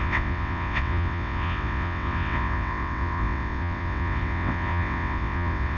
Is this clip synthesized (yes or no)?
yes